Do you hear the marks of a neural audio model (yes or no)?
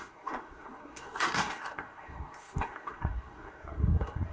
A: yes